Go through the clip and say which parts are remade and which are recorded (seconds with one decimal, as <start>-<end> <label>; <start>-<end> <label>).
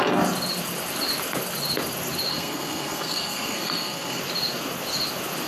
0.0-2.3 recorded; 2.3-4.2 remade; 4.2-5.5 recorded